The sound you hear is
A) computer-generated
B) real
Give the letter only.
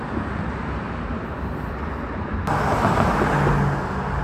B